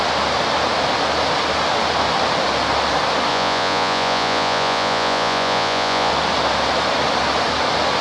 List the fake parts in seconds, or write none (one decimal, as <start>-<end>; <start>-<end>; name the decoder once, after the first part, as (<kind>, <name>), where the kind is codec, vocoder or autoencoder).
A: 3.3-6.1 (vocoder, Vocos)